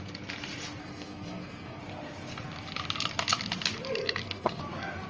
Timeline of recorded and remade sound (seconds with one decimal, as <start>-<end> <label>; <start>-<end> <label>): 0.0-0.8 recorded; 0.8-1.8 remade; 1.8-4.0 recorded; 4.0-4.6 remade; 4.6-5.1 recorded